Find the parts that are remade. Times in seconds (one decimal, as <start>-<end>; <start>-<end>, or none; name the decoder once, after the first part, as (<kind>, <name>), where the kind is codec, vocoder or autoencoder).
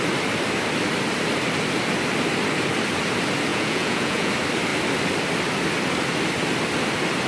3.5-4.3 (vocoder, Vocos)